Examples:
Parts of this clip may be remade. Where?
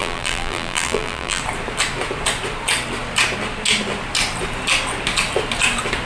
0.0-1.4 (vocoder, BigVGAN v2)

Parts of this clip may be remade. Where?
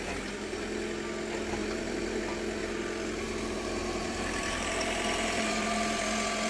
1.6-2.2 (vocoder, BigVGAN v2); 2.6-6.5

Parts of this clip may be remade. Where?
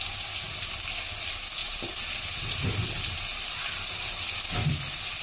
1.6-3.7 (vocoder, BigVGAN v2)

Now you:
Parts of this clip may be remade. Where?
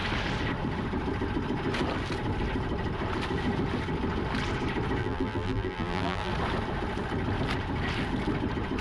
5.0-6.3 (vocoder, BigVGAN v2)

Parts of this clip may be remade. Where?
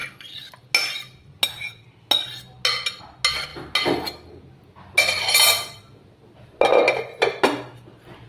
none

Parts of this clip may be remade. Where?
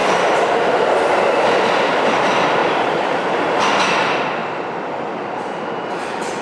0.0-0.7 (vocoder, BigVGAN v2); 2.6-3.6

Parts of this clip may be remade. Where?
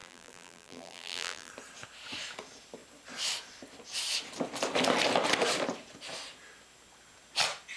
0.0-1.5 (vocoder, BigVGAN v2)